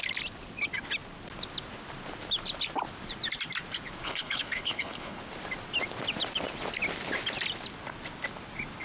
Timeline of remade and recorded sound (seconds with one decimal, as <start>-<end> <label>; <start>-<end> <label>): 0.0-4.0 recorded; 4.0-5.2 remade; 5.2-8.8 recorded

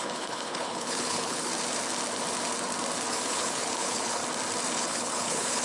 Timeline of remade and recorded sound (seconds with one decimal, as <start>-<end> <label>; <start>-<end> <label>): 0.0-1.5 remade; 1.5-3.1 recorded; 3.1-4.2 remade; 4.2-4.7 recorded; 4.7-5.6 remade